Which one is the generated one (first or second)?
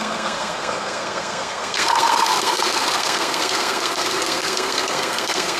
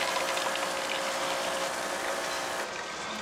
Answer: first